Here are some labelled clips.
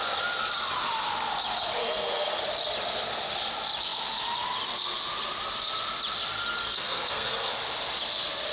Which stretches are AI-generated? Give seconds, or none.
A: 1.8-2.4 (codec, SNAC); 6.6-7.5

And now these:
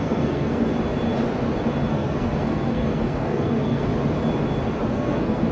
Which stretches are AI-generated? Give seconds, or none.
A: 0.0-0.7 (codec, SNAC); 1.9-3.9; 4.9-5.5

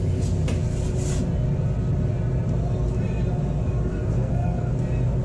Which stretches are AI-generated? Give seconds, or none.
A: 3.9-4.7 (codec, SNAC)

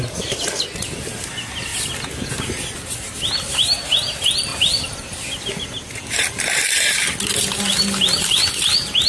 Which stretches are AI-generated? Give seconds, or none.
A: none